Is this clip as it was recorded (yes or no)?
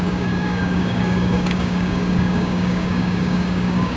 no